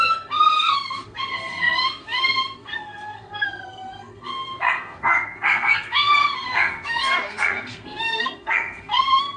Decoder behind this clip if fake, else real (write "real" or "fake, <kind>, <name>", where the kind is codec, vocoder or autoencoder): fake, codec, SNAC